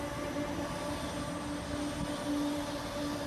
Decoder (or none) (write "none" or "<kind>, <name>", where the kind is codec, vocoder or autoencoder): none